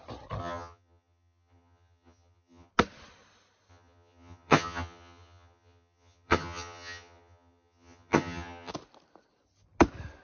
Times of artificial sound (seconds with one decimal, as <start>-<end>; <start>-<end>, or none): 0.4-2.7; 3.7-8.7